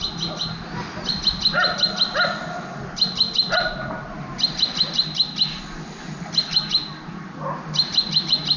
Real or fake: real